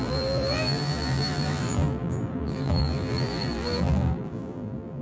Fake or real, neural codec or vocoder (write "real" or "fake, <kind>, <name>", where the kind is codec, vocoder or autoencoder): fake, vocoder, BigVGAN v2